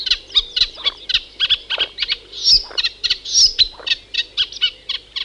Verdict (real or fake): real